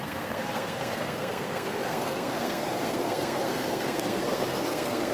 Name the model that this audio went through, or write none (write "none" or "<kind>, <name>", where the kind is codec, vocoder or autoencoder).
codec, SNAC